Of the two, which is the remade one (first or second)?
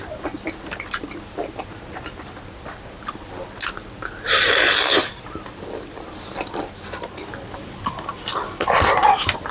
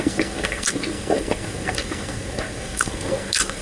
second